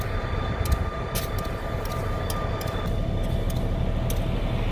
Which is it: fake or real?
real